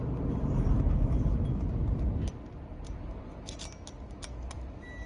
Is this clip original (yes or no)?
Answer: yes